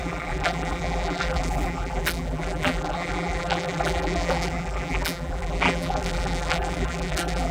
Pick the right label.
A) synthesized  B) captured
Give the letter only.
A